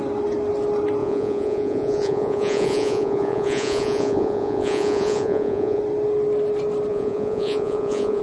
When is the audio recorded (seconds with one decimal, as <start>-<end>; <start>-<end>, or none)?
0.0-1.0; 5.8-6.9